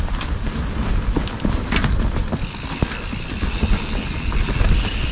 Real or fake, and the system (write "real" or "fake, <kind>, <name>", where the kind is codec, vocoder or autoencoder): real